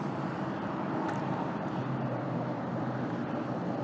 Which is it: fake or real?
fake